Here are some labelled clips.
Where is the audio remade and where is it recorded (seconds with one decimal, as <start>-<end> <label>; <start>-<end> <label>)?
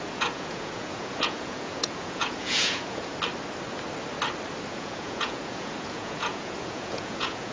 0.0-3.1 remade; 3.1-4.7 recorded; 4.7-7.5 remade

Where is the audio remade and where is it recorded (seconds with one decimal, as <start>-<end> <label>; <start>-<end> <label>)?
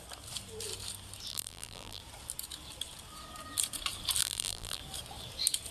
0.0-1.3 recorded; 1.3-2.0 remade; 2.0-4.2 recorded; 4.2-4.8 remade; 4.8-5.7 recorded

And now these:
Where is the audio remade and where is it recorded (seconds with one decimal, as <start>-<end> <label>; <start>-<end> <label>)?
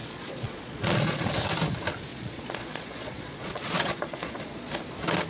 0.0-1.3 remade; 1.3-2.1 recorded; 2.1-4.8 remade; 4.8-5.3 recorded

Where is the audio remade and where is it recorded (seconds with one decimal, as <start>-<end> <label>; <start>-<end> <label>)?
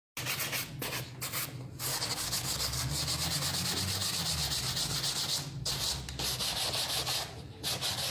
0.0-1.9 recorded; 1.9-2.9 remade; 2.9-8.1 recorded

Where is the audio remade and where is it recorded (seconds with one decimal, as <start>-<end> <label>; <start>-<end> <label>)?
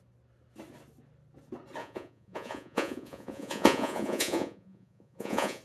0.0-1.8 recorded; 1.8-5.6 remade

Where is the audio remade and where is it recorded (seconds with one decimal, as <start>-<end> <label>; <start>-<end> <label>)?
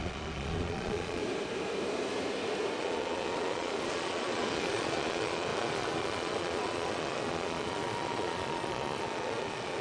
0.0-1.2 remade; 1.2-2.8 recorded; 2.8-9.8 remade